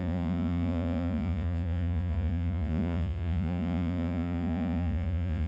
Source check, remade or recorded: remade